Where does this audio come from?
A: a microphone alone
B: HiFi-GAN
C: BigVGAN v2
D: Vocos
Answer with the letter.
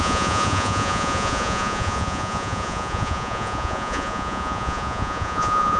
D